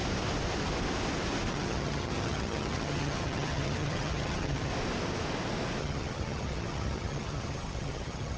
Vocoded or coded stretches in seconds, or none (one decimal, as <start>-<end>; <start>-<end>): 1.5-4.7; 5.8-8.4